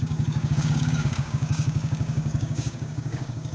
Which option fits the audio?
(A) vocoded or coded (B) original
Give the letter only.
A